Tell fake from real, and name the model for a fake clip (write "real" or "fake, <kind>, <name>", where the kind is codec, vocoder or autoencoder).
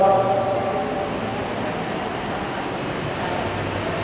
real